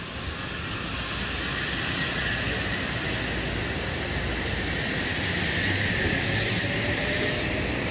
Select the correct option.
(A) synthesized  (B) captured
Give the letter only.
B